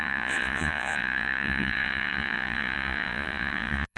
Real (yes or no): no